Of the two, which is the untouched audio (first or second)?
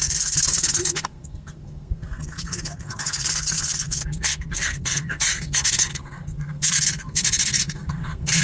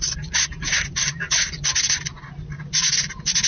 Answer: second